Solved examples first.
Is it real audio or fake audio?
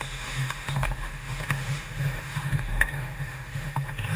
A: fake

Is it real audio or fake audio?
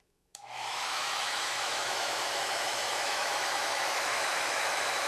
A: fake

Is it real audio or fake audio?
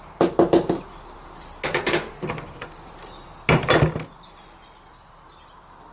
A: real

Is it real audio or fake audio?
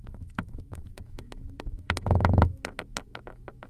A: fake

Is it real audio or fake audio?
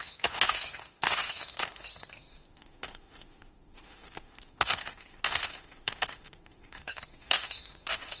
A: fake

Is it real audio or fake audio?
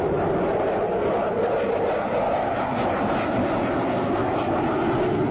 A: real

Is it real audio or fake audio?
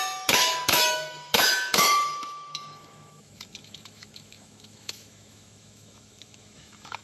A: fake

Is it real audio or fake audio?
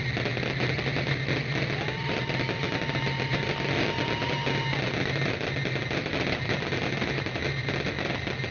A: real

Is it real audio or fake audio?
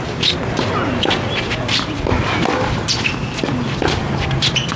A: real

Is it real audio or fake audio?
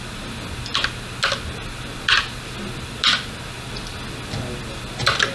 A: real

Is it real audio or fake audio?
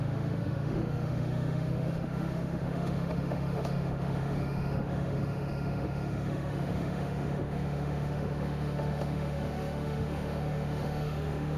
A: fake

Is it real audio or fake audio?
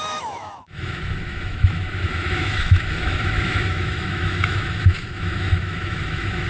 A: fake